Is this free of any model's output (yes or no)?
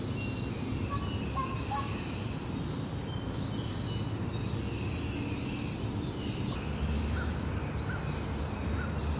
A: yes